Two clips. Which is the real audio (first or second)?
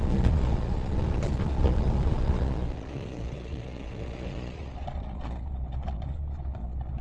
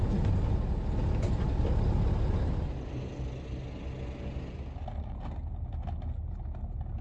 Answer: second